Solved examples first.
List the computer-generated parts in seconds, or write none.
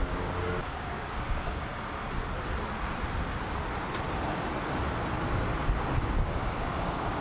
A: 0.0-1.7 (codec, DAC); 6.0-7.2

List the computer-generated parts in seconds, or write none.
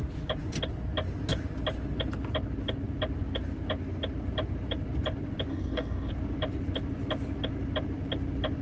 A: 5.5-6.1 (codec, DAC)